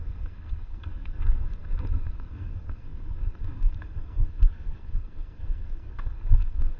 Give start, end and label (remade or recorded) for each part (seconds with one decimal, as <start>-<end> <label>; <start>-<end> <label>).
0.0-6.8 remade